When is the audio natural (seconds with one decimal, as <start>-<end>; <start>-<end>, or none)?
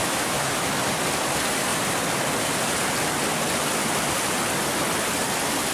0.7-5.7